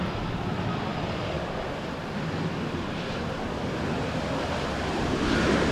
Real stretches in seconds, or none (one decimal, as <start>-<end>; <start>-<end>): 0.0-0.9; 4.3-5.7